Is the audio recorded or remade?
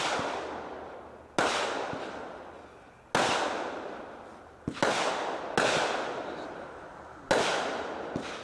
recorded